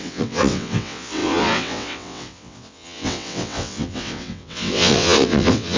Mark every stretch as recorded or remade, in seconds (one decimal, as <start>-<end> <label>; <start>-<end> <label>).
0.0-5.8 remade